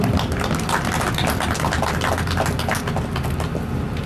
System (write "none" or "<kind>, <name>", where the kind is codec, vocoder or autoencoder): none